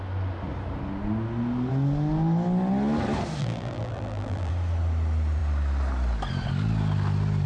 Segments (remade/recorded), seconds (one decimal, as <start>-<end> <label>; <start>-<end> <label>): 0.0-3.4 recorded; 3.4-4.5 remade; 4.5-7.5 recorded